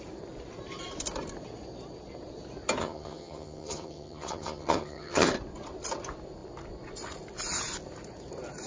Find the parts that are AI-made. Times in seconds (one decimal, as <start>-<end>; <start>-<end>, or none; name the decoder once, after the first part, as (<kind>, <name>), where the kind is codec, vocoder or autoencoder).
2.8-5.3 (vocoder, HiFi-GAN)